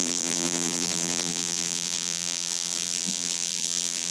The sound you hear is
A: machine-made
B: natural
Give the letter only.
A